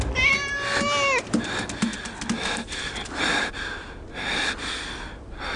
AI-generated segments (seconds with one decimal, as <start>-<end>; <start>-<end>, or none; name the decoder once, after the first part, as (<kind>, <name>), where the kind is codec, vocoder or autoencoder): none